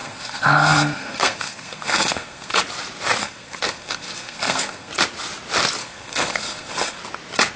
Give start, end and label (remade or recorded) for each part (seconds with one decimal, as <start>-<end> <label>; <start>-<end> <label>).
0.0-2.6 remade; 2.6-3.2 recorded; 3.2-4.9 remade; 4.9-5.8 recorded; 5.8-7.0 remade; 7.0-7.6 recorded